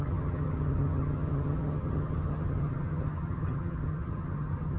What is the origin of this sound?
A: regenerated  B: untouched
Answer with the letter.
A